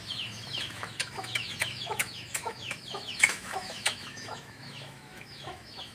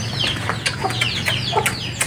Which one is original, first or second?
second